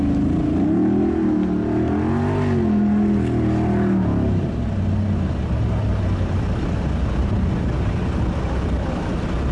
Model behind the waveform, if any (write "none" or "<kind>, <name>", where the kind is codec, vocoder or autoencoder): none